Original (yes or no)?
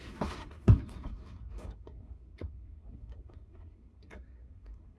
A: no